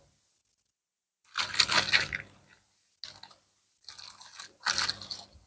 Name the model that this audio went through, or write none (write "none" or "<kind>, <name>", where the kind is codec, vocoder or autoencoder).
none